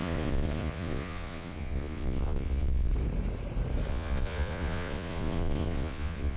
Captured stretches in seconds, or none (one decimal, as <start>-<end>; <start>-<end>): 2.9-3.9